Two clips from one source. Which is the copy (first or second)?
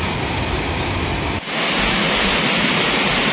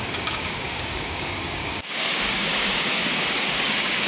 second